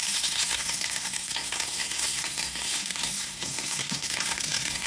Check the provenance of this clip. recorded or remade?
remade